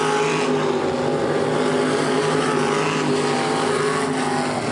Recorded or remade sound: recorded